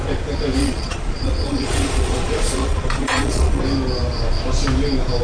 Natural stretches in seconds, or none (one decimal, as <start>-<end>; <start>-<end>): 0.0-0.6; 3.6-5.2